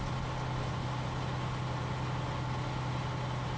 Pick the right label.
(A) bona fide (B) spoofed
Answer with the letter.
A